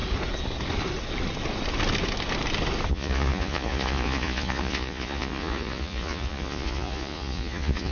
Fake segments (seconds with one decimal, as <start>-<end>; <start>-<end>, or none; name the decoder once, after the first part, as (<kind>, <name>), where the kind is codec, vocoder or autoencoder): 2.9-7.9 (vocoder, Vocos)